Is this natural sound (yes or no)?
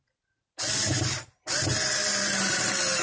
yes